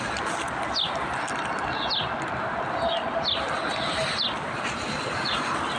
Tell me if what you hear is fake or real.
real